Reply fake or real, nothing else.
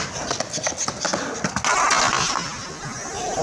real